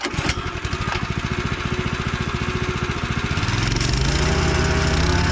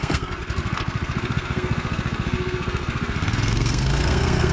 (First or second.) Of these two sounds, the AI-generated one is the second